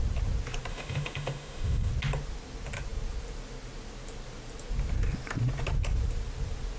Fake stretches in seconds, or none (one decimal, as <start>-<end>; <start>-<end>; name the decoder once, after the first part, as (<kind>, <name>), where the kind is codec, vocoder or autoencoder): 0.7-1.9 (autoencoder, DAC-VAE)